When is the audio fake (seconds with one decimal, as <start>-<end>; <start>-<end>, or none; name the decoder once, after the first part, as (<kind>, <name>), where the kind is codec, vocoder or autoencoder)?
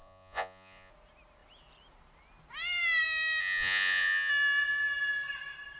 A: 0.0-0.9 (vocoder, Vocos); 3.4-4.3